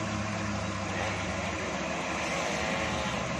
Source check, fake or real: real